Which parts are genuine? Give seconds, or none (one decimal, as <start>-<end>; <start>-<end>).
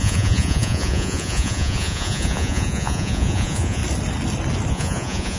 3.8-4.7